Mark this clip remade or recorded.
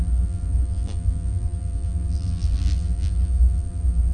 remade